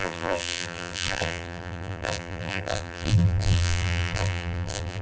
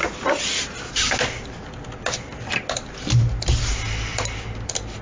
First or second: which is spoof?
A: first